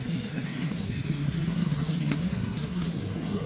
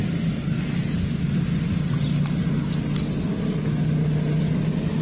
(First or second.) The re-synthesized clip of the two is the first